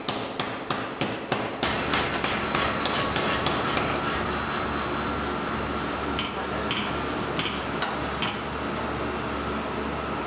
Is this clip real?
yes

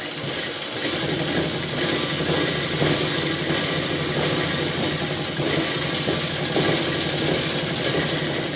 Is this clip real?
yes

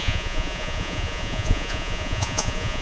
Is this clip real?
no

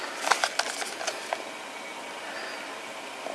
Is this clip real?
yes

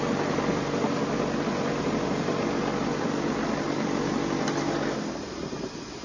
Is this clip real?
yes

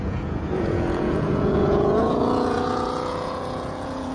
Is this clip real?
no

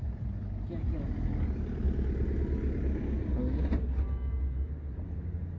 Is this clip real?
yes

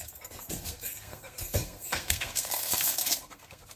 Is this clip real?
no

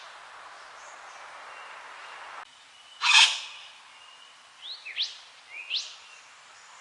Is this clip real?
yes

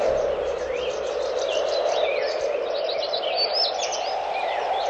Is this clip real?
yes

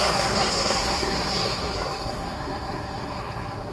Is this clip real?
no